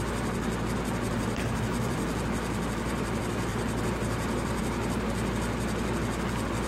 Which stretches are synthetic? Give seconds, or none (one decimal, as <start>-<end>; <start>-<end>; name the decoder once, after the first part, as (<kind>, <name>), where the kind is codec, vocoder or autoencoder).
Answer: 3.5-4.6 (vocoder, BigVGAN v2)

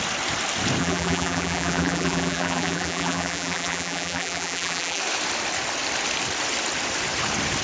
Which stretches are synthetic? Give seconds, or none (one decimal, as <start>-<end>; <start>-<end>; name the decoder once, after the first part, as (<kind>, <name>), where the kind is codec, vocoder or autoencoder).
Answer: 0.8-5.0 (vocoder, BigVGAN v2)

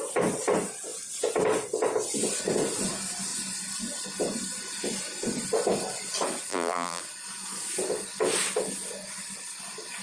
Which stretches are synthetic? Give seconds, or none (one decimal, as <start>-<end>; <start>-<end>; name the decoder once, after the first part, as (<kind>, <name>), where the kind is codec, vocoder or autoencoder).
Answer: 6.5-7.0 (vocoder, BigVGAN v2)

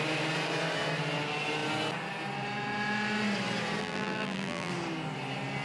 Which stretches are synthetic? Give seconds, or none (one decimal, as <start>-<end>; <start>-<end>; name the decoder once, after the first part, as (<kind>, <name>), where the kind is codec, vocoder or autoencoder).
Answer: 3.8-4.7 (vocoder, BigVGAN v2)

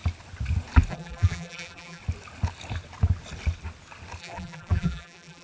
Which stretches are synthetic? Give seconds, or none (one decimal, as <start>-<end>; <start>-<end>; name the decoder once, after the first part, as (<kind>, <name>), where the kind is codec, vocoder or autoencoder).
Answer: 0.9-2.0 (vocoder, BigVGAN v2); 4.2-5.4

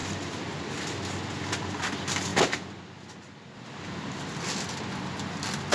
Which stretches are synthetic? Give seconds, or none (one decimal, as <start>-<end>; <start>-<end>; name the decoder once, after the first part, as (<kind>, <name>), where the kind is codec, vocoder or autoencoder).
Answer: 0.0-0.7 (vocoder, BigVGAN v2)